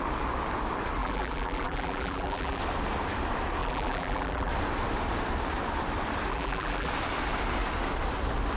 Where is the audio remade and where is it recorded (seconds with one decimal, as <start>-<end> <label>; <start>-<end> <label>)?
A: 0.0-1.0 recorded; 1.0-2.6 remade; 2.6-3.6 recorded; 3.6-4.5 remade; 4.5-6.3 recorded; 6.3-6.9 remade; 6.9-8.6 recorded